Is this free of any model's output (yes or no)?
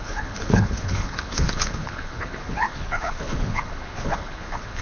no